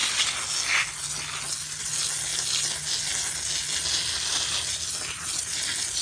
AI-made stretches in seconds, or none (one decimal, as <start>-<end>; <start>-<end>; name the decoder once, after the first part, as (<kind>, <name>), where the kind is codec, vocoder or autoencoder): none